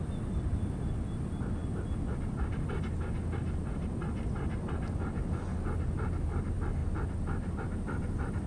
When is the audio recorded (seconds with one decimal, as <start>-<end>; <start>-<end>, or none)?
0.0-8.5